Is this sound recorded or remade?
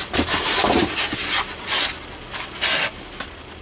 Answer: recorded